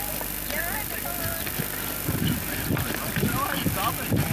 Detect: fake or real real